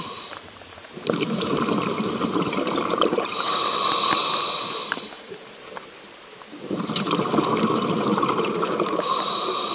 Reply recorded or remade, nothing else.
remade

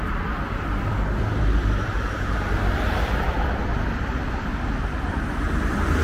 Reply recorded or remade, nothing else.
remade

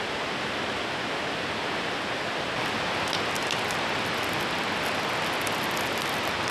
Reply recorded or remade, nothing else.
recorded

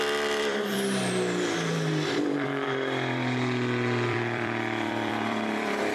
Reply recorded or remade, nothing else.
remade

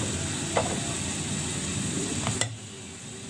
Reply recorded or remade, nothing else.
recorded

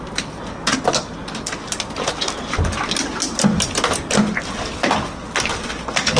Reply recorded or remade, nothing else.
recorded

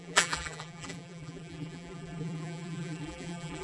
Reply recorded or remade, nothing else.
remade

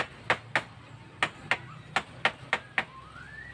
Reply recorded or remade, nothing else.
recorded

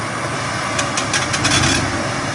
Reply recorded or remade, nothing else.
recorded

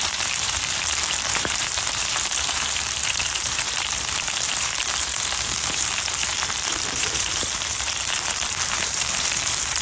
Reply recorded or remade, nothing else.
remade